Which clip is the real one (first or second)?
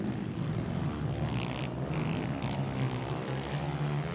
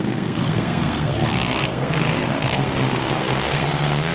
first